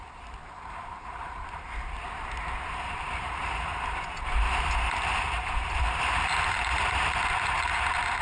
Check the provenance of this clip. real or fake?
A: fake